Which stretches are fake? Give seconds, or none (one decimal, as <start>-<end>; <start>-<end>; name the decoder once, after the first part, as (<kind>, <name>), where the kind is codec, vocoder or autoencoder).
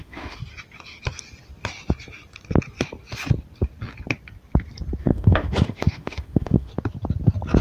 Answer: 0.0-0.4 (autoencoder, DAC-VAE); 5.0-6.7